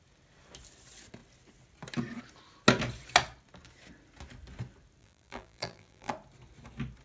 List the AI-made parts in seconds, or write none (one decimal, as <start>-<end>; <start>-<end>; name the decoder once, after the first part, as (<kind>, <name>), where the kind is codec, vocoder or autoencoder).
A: 5.0-6.1 (vocoder, BigVGAN v2)